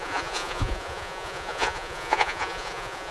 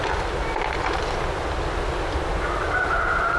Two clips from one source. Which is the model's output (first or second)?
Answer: first